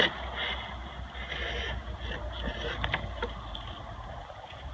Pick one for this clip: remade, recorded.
recorded